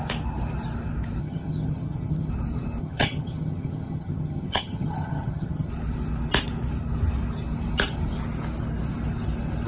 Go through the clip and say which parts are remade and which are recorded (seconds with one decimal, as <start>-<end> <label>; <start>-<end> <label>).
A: 0.0-1.2 recorded; 1.2-2.3 remade; 2.3-2.8 recorded; 2.8-5.7 remade; 5.7-9.7 recorded